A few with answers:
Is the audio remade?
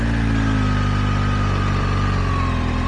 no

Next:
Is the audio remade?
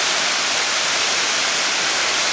yes